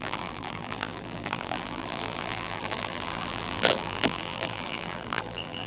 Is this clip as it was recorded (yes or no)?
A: no